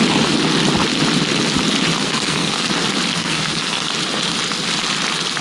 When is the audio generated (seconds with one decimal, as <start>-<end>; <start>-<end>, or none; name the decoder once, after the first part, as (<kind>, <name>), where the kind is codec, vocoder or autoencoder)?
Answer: 2.0-2.7 (codec, SNAC); 3.1-3.9